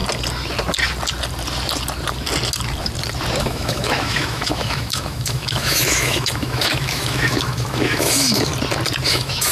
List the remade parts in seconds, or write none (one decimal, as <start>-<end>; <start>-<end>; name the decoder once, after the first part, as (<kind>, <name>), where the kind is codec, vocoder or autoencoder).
3.4-8.5 (autoencoder, DAC-VAE); 9.1-9.5